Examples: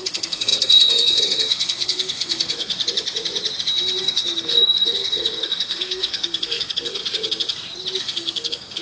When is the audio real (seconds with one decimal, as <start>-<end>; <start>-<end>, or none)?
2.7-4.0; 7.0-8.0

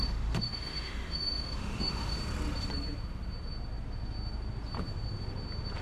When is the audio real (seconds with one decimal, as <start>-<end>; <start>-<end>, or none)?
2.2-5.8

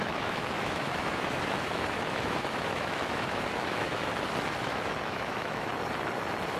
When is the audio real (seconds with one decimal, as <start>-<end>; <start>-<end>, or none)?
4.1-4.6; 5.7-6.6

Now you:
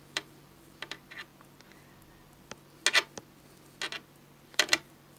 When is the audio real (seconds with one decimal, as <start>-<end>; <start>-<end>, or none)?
1.3-4.4

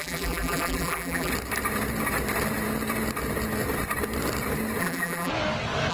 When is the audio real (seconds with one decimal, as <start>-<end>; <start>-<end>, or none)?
1.3-4.8; 5.3-5.9